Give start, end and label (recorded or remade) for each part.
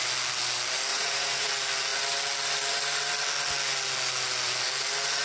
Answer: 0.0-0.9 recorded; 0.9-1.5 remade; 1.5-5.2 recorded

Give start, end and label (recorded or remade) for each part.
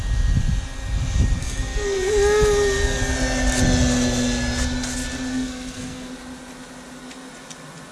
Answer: 0.0-1.4 recorded; 1.4-2.1 remade; 2.1-5.3 recorded; 5.3-6.1 remade; 6.1-7.9 recorded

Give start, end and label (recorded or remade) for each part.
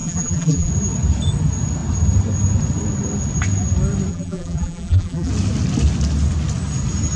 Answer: 0.0-0.7 remade; 0.7-4.1 recorded; 4.1-5.3 remade; 5.3-7.2 recorded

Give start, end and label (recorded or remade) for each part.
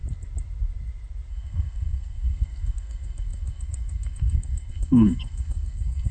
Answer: 0.0-1.3 recorded; 1.3-6.1 remade